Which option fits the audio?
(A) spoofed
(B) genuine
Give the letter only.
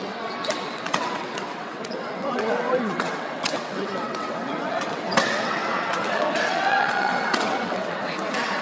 A